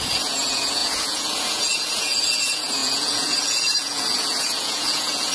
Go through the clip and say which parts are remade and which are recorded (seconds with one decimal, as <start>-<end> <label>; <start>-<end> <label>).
0.0-5.3 remade